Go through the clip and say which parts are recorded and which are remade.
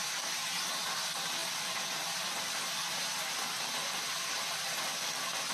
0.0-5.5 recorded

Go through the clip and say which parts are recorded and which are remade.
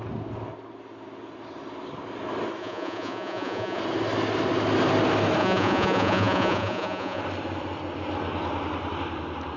0.0-2.6 recorded; 2.6-3.8 remade; 3.8-5.4 recorded; 5.4-7.2 remade; 7.2-9.6 recorded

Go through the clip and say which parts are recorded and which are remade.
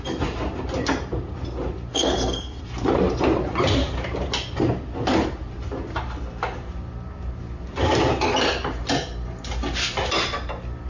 0.0-1.9 recorded; 1.9-2.6 remade; 2.6-10.9 recorded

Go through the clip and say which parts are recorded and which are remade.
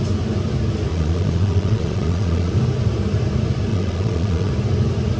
0.0-0.9 recorded; 0.9-2.5 remade; 2.5-3.7 recorded; 3.7-4.5 remade; 4.5-5.2 recorded